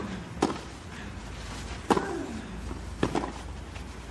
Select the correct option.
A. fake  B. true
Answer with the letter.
B